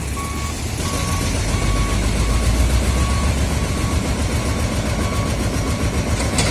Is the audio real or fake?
real